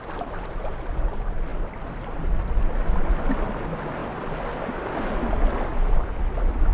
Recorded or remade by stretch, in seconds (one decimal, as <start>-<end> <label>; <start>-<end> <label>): 0.0-5.7 recorded; 5.7-6.3 remade; 6.3-6.7 recorded